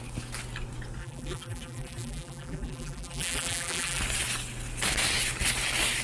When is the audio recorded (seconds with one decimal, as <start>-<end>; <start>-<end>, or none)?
0.0-1.0; 4.0-6.0